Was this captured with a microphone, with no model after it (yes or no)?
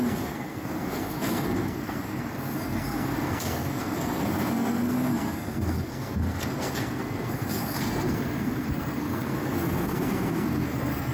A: no